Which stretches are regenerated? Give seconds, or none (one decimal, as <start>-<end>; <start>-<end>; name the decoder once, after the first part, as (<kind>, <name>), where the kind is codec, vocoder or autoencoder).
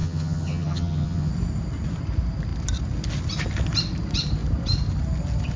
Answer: 0.0-1.3 (vocoder, HiFi-GAN)